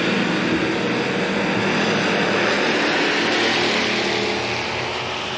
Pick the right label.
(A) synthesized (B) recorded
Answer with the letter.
B